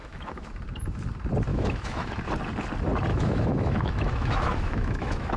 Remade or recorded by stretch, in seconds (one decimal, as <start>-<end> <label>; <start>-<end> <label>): 0.0-0.5 remade; 0.5-1.5 recorded; 1.5-2.2 remade; 2.2-3.1 recorded; 3.1-5.4 remade